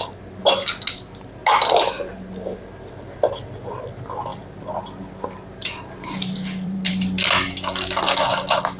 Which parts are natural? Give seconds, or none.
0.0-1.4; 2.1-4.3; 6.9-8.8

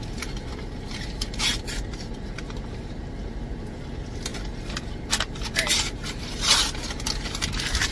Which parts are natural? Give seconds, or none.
none

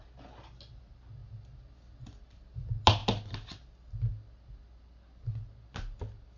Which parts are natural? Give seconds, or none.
0.0-6.4

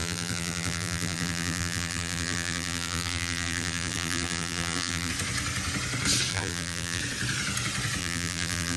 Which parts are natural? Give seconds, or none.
5.1-6.3; 7.0-8.0

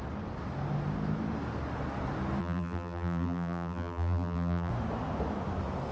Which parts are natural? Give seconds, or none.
0.0-2.4; 4.7-5.9

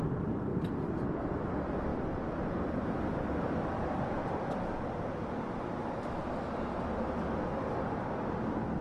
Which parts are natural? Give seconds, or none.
0.0-0.5; 1.5-1.9; 6.4-8.8

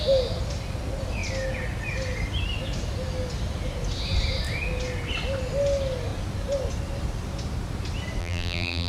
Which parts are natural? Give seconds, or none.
0.0-8.2